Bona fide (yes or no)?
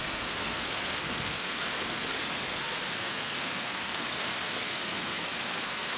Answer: no